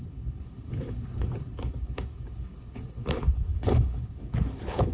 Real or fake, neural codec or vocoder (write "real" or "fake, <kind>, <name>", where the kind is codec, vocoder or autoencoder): fake, codec, HILCodec